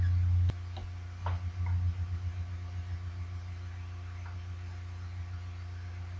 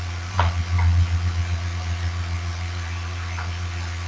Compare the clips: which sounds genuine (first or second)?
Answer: first